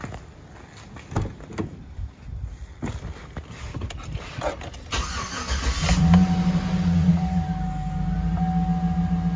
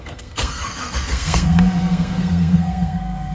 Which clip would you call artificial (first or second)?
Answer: second